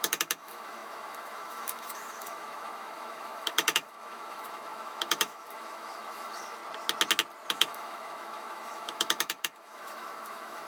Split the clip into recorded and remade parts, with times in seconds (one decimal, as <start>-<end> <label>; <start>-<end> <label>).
0.0-6.6 remade; 6.6-7.5 recorded; 7.5-10.7 remade